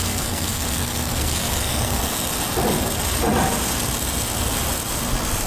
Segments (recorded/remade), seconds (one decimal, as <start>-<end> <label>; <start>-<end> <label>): 0.0-2.0 remade; 2.0-5.5 recorded